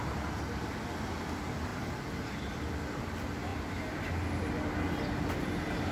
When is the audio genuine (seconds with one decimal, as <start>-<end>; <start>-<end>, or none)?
0.0-5.9